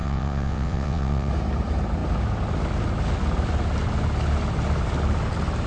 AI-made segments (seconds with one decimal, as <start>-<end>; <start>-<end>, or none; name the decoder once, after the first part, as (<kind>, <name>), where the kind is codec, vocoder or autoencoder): 0.0-1.3 (vocoder, WaveNeXt)